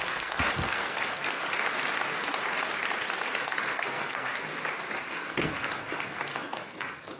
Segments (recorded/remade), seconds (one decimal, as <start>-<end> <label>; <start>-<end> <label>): 0.0-1.4 remade; 1.4-3.4 recorded; 3.4-4.5 remade; 4.5-5.1 recorded; 5.1-7.2 remade